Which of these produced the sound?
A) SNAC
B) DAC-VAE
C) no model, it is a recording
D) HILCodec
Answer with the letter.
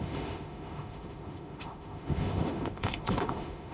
B